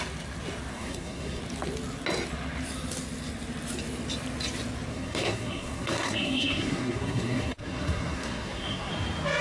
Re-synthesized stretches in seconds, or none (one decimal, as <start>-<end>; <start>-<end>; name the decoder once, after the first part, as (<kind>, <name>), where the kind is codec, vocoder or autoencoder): 0.7-1.4 (codec, SNAC); 4.9-8.9